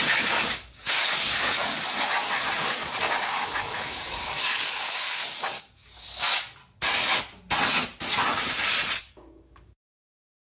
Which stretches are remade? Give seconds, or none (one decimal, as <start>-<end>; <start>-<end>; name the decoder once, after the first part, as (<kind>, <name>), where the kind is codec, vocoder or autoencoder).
0.0-6.6 (codec, DAC); 9.0-10.4